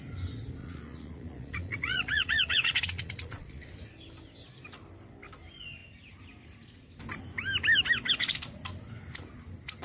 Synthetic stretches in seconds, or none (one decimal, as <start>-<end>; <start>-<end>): 0.6-3.7